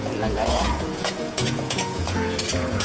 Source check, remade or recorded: remade